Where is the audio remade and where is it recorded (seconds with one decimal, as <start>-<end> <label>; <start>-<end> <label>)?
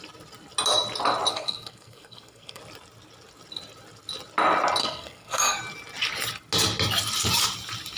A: 0.0-1.3 recorded; 1.3-2.6 remade; 2.6-4.8 recorded; 4.8-5.6 remade; 5.6-8.0 recorded